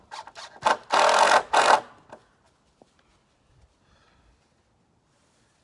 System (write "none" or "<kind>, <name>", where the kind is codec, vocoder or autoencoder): none